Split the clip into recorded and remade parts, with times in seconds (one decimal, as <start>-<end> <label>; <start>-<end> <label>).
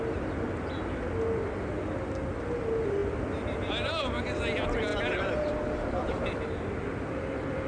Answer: 0.0-4.9 recorded; 4.9-7.7 remade